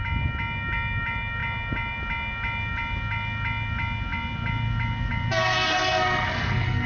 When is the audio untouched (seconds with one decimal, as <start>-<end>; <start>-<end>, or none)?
0.0-5.7